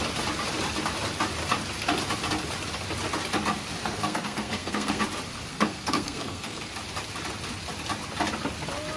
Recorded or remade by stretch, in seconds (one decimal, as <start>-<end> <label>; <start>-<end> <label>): 0.0-3.8 recorded; 3.8-5.0 remade; 5.0-5.5 recorded; 5.5-6.7 remade; 6.7-9.0 recorded